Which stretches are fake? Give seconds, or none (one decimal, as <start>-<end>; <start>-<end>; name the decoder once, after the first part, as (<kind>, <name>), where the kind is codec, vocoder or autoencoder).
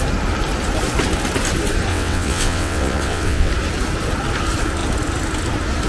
1.9-3.5 (vocoder, WaveNeXt)